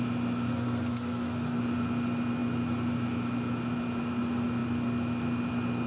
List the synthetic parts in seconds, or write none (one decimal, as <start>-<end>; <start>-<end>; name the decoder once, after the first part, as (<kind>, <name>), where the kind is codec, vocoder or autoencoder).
0.5-1.6 (codec, SNAC)